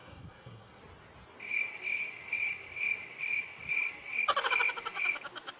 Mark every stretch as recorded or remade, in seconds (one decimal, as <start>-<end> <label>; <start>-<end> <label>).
0.0-0.8 remade; 0.8-5.6 recorded